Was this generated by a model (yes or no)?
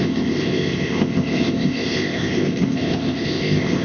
yes